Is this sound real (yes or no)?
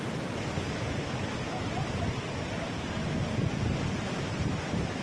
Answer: yes